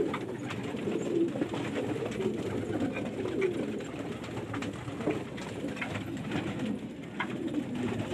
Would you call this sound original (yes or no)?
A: yes